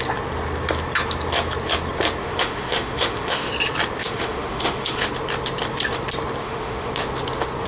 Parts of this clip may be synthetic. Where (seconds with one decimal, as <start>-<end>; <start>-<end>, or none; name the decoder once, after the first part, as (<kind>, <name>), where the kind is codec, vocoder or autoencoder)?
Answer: 2.2-3.5 (autoencoder, DAC-VAE); 4.0-5.1; 6.4-6.9